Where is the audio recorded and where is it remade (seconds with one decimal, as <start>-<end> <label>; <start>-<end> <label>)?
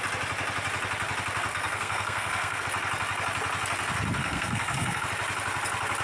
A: 0.0-1.5 recorded; 1.5-2.6 remade; 2.6-4.2 recorded; 4.2-5.0 remade; 5.0-6.0 recorded